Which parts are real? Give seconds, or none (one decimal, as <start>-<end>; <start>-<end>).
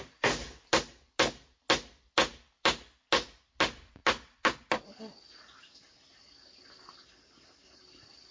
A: 0.0-8.3